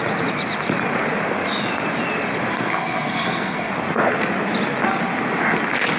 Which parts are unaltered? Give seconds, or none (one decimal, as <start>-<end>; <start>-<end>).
0.0-2.5; 3.7-6.0